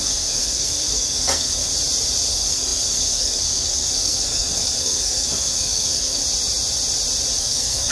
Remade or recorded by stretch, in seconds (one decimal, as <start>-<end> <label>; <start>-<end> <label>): 0.0-1.7 remade; 1.7-2.3 recorded; 2.3-6.2 remade; 6.2-7.4 recorded; 7.4-7.9 remade